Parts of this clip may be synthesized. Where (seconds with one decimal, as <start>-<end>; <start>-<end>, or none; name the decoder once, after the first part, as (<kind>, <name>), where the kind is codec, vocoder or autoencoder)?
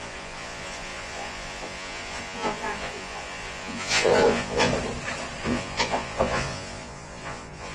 0.0-4.7 (vocoder, Vocos); 5.4-7.7